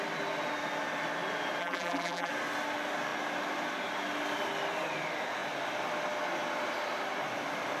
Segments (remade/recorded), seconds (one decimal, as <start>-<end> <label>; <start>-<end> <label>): 0.0-1.6 recorded; 1.6-2.3 remade; 2.3-7.8 recorded